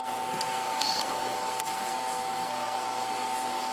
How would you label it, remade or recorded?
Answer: remade